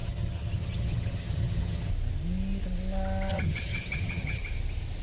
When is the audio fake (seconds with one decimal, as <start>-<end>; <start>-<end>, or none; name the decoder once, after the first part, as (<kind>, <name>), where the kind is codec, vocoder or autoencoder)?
0.0-1.9 (vocoder, HiFi-GAN); 3.3-4.4